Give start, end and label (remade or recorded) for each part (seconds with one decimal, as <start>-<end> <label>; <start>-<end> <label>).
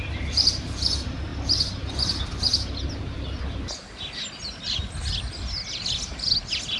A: 0.0-6.8 recorded